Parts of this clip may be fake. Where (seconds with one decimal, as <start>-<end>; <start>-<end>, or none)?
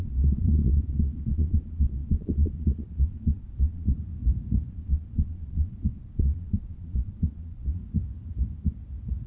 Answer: 0.0-4.0; 4.7-7.8